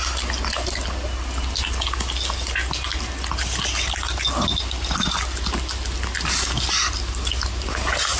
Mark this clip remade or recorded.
recorded